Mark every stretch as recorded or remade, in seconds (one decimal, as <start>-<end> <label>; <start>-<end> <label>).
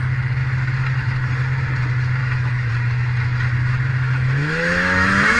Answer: 0.0-2.2 recorded; 2.2-2.7 remade; 2.7-3.9 recorded; 3.9-5.4 remade